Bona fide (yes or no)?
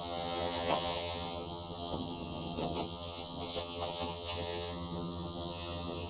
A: no